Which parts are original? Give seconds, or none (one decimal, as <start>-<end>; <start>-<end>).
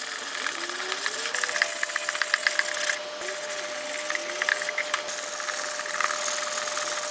0.0-7.1